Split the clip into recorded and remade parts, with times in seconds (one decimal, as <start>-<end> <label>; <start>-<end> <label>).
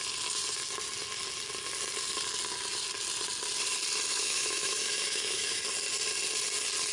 0.0-4.1 recorded; 4.1-5.6 remade; 5.6-6.9 recorded